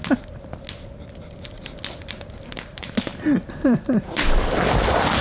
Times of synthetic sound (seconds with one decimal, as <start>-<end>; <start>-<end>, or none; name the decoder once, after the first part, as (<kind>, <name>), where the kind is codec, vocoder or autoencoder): 3.1-4.5 (vocoder, BigVGAN v2)